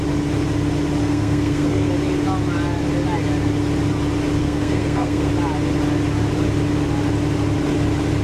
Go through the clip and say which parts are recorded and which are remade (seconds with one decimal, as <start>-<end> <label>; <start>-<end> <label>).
0.0-1.0 recorded; 1.0-1.9 remade; 1.9-4.4 recorded; 4.4-5.3 remade; 5.3-8.2 recorded